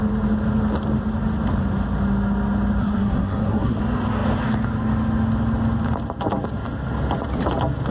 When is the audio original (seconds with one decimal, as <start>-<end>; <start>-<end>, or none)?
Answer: 0.0-2.8; 3.8-7.9